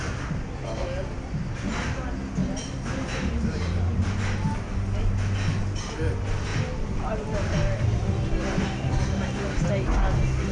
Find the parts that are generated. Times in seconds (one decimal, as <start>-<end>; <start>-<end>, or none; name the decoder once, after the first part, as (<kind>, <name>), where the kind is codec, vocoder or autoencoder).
2.4-3.8 (vocoder, BigVGAN v2); 6.5-7.2